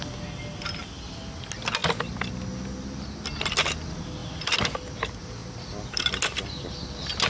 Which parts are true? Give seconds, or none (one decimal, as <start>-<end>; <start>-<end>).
0.0-1.8; 2.3-4.2; 4.9-5.4; 6.1-7.3